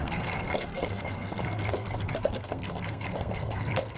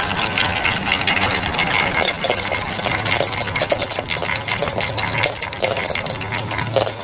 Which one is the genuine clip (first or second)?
second